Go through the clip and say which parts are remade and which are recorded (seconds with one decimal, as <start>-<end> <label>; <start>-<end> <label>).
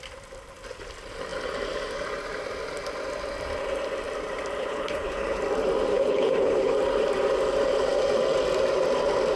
0.0-4.6 recorded; 4.6-5.4 remade; 5.4-5.9 recorded; 5.9-6.7 remade; 6.7-9.4 recorded